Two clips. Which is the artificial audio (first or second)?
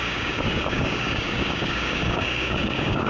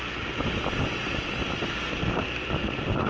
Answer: first